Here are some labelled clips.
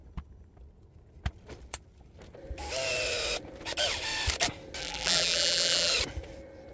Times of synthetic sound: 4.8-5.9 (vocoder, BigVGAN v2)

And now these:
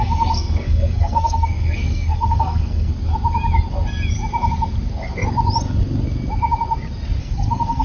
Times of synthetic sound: 0.0-2.9 (codec, SNAC); 7.2-7.8